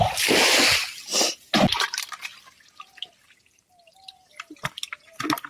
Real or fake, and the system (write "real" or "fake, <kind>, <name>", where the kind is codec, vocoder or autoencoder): real